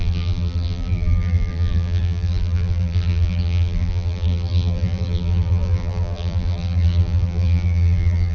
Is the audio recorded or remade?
remade